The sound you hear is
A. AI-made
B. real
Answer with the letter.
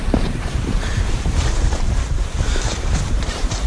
A